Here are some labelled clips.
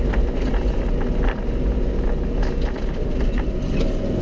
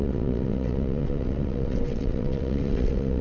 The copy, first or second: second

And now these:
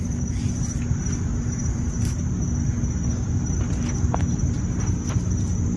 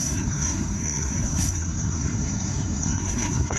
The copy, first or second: second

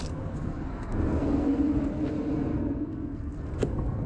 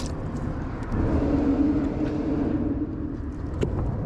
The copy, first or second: first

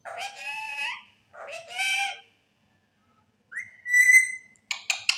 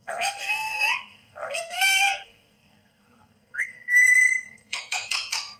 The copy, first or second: second